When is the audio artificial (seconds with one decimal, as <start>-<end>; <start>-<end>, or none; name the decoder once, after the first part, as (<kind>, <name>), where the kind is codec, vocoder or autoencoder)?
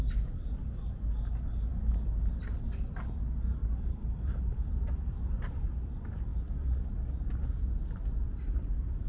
3.6-4.4 (vocoder, BigVGAN v2); 6.3-6.8